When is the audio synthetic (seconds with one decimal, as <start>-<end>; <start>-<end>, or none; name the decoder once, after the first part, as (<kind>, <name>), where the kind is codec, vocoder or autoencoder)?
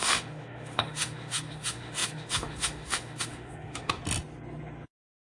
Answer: 0.0-4.0 (autoencoder, DAC-VAE)